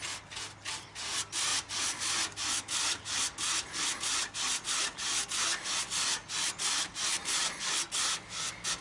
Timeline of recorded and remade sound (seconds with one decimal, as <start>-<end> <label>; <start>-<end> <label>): 0.0-8.8 recorded

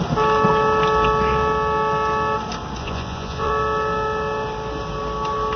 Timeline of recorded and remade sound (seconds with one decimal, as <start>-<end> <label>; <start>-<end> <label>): 0.0-2.8 recorded; 2.8-3.5 remade; 3.5-5.6 recorded